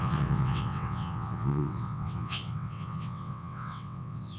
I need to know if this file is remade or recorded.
remade